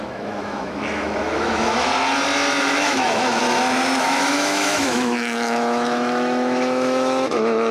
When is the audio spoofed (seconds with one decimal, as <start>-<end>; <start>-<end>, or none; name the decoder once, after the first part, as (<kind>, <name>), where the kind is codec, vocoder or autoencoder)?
0.0-1.9 (autoencoder, DAC-VAE); 2.6-3.4; 4.0-7.7